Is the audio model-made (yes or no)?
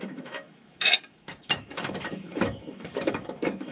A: yes